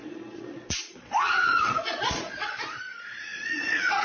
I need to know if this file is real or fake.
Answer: fake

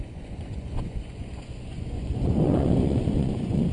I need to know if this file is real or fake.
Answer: fake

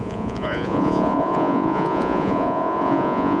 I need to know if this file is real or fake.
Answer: fake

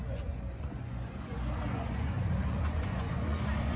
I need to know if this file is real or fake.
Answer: fake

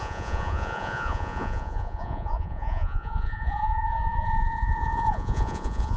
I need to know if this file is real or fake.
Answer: fake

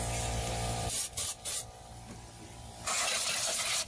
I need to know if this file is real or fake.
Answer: real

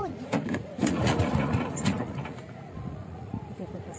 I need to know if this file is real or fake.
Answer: fake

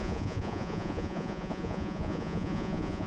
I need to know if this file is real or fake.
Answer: fake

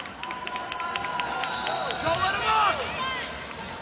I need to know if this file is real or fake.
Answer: real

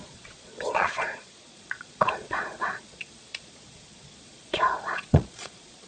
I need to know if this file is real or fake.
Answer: fake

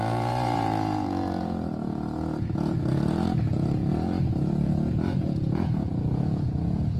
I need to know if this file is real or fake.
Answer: fake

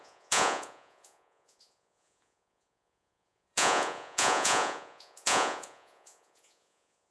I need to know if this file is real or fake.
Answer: fake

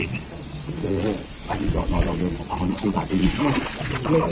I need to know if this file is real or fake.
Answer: fake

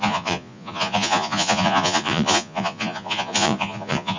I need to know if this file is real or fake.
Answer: fake